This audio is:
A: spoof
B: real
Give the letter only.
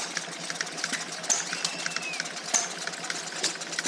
B